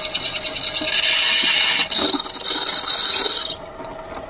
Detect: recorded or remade recorded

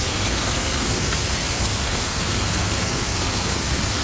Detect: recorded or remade remade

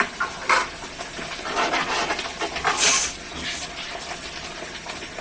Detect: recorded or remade recorded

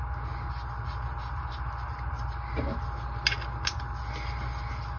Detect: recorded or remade recorded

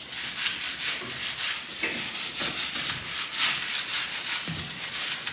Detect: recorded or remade recorded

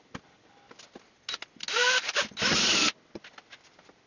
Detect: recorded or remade recorded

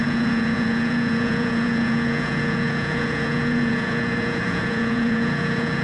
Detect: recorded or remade remade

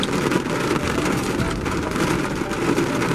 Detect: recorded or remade recorded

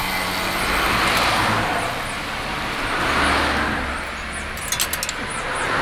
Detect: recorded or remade recorded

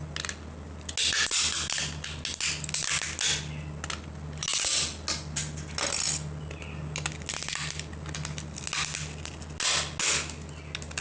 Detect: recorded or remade recorded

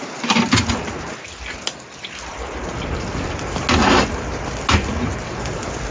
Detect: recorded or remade recorded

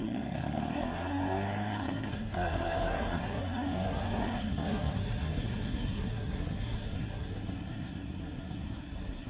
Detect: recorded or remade remade